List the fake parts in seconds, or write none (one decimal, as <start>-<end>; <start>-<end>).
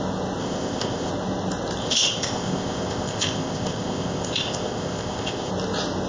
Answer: 0.4-1.1; 1.8-5.5